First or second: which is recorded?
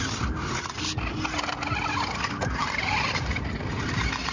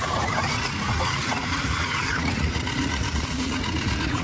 first